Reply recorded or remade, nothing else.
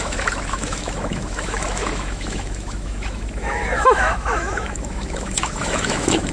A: remade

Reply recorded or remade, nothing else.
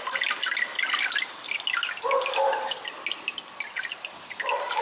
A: recorded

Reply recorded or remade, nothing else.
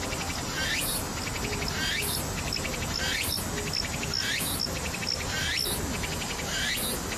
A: recorded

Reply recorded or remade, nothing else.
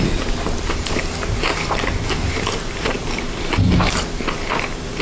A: recorded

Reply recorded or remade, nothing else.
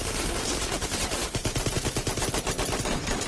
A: remade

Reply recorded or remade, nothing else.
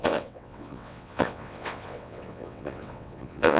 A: remade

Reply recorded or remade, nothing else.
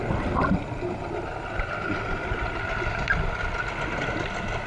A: recorded